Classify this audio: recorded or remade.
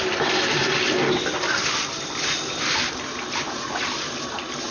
recorded